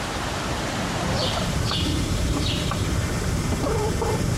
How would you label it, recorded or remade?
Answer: remade